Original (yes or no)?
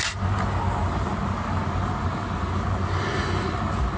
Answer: yes